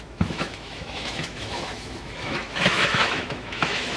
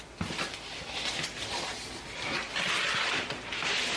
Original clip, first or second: second